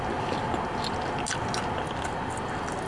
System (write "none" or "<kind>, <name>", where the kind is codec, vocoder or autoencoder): none